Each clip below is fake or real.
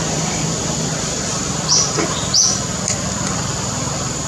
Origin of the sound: real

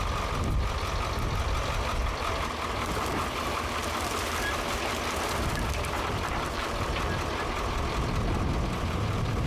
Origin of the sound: real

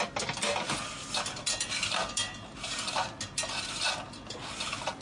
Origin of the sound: real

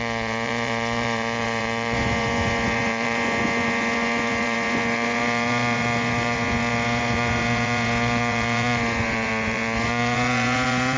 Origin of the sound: fake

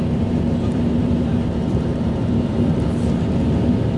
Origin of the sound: fake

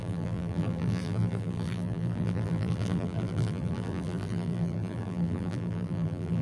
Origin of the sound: fake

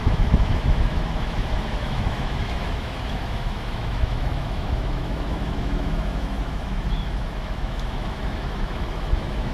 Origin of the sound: fake